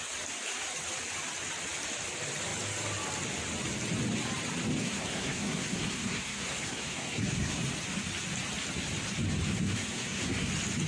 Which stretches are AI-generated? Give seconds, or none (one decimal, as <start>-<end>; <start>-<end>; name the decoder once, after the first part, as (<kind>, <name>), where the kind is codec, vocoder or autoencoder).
4.8-7.6 (codec, SNAC); 9.5-10.5

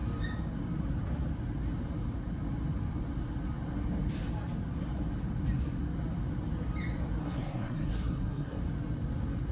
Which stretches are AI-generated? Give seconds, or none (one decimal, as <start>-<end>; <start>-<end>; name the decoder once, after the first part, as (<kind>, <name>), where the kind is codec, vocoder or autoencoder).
7.2-8.6 (codec, SNAC)

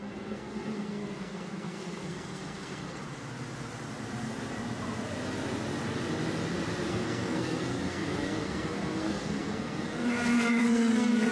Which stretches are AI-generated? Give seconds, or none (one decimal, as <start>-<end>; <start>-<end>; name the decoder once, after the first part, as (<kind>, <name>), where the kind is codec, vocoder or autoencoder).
0.0-3.0 (codec, SNAC); 6.9-11.3

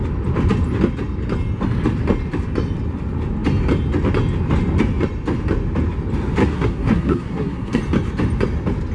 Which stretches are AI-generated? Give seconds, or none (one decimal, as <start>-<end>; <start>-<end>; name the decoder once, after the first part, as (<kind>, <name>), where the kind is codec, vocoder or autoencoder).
6.4-7.8 (codec, SNAC)

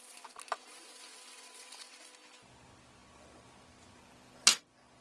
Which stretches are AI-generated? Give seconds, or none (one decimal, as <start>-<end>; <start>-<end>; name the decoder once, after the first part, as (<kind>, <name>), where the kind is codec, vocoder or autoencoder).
none